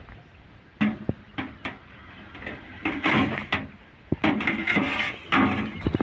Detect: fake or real real